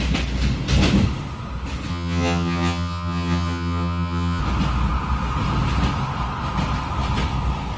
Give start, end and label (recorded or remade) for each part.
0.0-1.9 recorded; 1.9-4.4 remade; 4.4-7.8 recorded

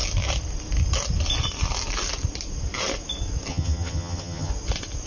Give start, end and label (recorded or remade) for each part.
0.0-3.5 recorded; 3.5-4.5 remade; 4.5-5.1 recorded